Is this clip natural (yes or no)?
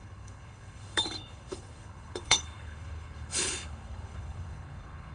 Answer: no